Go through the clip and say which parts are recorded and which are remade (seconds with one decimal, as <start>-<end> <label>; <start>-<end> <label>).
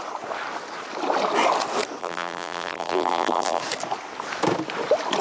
0.0-2.0 recorded; 2.0-3.6 remade; 3.6-5.2 recorded